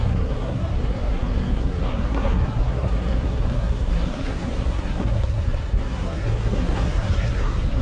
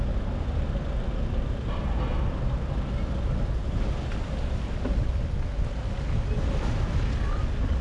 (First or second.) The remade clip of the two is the first